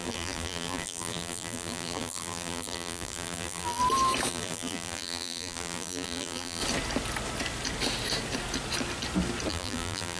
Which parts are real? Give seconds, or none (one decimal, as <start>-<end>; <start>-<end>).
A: 3.8-4.3; 6.6-9.5